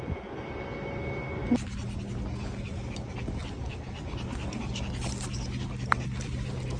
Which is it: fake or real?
real